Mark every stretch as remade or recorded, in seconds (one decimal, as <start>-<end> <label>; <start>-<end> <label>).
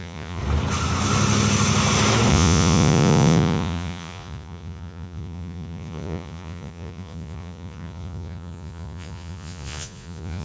0.0-0.4 remade; 0.4-2.3 recorded; 2.3-10.4 remade